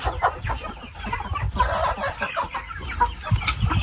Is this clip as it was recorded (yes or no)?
yes